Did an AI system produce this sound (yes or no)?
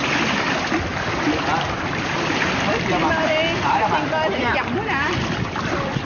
no